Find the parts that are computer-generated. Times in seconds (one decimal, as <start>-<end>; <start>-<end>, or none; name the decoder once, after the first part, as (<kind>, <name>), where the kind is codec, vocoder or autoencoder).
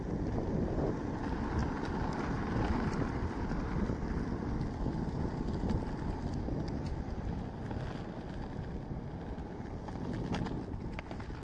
none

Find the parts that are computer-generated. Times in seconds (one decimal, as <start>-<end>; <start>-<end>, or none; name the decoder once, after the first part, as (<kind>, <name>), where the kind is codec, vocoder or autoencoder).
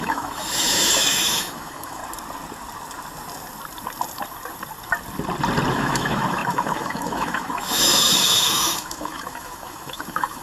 0.0-2.0 (autoencoder, DAC-VAE); 5.7-10.4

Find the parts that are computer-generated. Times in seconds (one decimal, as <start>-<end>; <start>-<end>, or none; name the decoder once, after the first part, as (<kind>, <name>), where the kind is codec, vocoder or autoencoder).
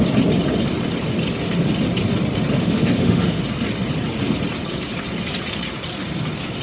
2.6-3.4 (autoencoder, DAC-VAE)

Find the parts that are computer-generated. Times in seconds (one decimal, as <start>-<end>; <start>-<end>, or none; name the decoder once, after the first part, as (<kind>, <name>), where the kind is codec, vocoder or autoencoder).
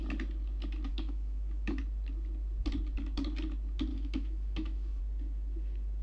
0.9-1.8 (autoencoder, DAC-VAE); 3.9-5.0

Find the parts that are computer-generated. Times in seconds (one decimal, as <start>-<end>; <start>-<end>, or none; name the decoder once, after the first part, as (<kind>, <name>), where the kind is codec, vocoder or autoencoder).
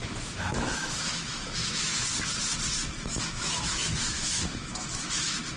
0.0-2.1 (autoencoder, DAC-VAE); 3.0-5.6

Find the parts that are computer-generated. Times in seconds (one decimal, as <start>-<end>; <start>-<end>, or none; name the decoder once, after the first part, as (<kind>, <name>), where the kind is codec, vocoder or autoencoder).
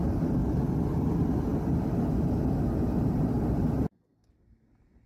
none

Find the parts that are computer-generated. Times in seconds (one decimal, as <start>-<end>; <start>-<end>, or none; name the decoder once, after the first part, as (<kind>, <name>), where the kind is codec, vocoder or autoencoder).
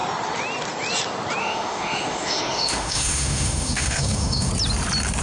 1.4-4.5 (autoencoder, DAC-VAE)